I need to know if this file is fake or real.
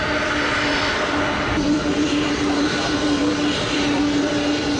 fake